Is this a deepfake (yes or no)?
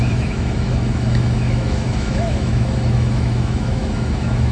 yes